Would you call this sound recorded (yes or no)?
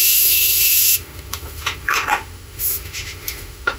no